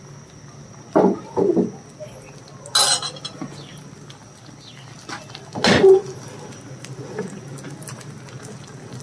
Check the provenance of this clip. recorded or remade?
recorded